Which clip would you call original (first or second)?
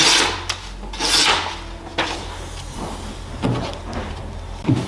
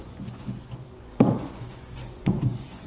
first